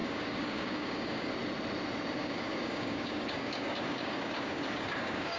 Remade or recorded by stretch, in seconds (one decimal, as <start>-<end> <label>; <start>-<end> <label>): 0.0-1.3 remade; 1.3-2.2 recorded; 2.2-5.4 remade